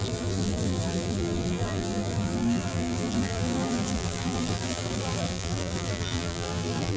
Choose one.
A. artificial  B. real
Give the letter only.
A